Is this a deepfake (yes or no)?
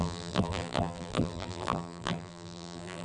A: yes